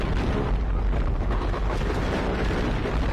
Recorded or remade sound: recorded